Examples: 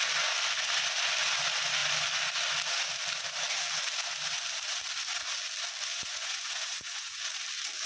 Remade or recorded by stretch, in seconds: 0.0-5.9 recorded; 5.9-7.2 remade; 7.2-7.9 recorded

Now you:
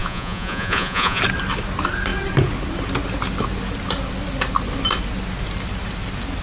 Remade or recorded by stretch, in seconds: 0.0-1.2 remade; 1.2-6.4 recorded

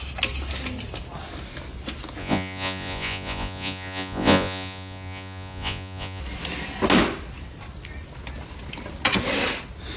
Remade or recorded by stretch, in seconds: 0.0-2.2 recorded; 2.2-6.2 remade; 6.2-10.0 recorded

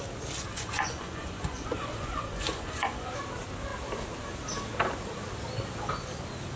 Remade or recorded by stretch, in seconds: 0.0-0.5 recorded; 0.5-3.1 remade; 3.1-6.6 recorded

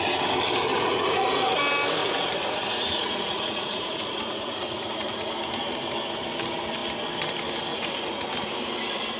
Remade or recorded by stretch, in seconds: 0.0-0.7 recorded; 0.7-1.6 remade; 1.6-2.0 recorded; 2.0-5.3 remade; 5.3-7.7 recorded; 7.7-8.2 remade; 8.2-9.2 recorded